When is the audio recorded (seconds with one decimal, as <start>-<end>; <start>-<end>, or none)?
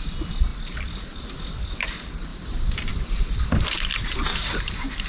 0.0-5.1